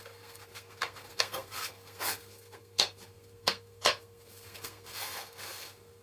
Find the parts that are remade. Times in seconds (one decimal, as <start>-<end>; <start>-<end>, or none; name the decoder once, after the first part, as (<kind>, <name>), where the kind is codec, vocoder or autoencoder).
0.0-6.0 (codec, SNAC)